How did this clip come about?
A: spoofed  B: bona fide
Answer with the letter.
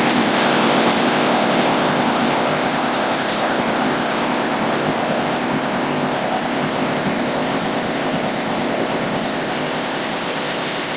A